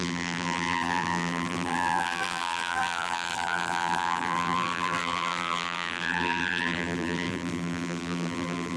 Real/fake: fake